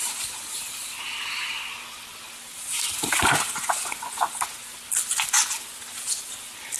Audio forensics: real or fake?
real